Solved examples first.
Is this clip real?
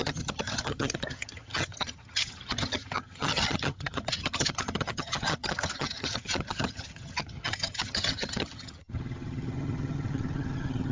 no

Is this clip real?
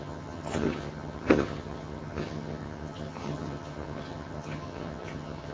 no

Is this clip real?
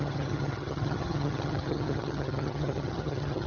no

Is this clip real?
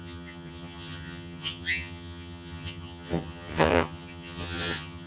no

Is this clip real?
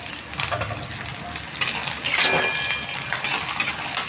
yes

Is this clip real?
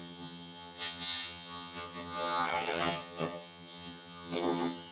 no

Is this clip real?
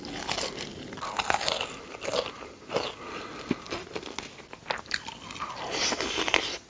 yes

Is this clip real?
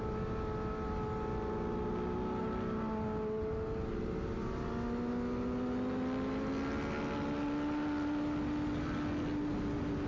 yes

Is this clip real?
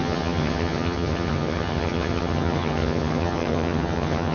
no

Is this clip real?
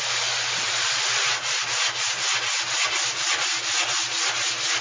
yes